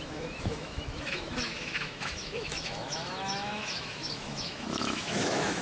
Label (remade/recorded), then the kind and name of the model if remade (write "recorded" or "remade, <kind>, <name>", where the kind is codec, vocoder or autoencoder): remade, autoencoder, DAC-VAE